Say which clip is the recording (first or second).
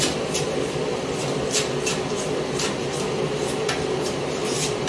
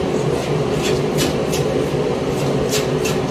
second